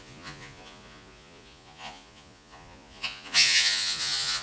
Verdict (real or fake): fake